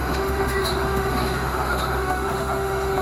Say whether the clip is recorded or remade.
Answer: remade